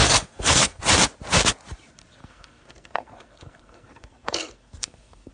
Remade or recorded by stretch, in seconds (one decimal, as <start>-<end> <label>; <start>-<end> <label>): 0.0-0.8 remade; 0.8-2.2 recorded; 2.2-5.3 remade